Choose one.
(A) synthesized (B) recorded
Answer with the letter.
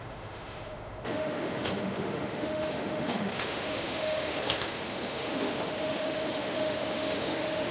A